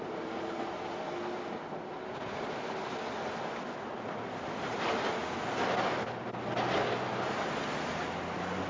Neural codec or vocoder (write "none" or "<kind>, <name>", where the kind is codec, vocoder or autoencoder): none